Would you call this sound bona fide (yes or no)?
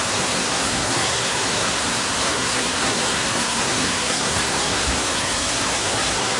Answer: no